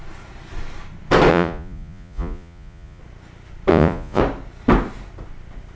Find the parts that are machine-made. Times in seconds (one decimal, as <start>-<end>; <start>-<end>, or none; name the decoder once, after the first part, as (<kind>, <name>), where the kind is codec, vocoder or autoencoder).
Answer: 1.3-3.0 (vocoder, Vocos); 3.7-4.2